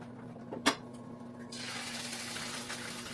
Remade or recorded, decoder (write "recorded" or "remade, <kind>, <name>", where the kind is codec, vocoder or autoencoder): recorded